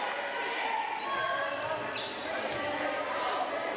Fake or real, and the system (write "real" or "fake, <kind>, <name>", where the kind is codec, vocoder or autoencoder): real